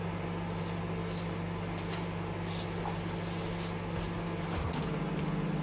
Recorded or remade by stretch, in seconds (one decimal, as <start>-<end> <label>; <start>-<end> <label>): 0.0-5.6 recorded